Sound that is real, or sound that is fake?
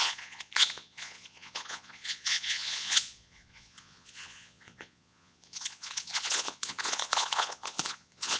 fake